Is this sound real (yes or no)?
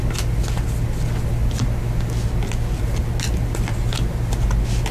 yes